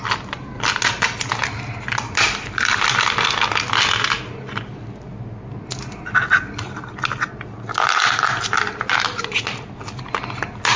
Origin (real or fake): real